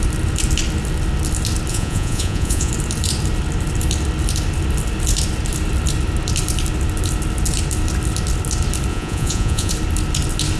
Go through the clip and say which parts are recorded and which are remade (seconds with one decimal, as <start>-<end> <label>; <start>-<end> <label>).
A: 0.0-1.7 recorded; 1.7-2.7 remade; 2.7-8.9 recorded; 8.9-9.7 remade; 9.7-10.6 recorded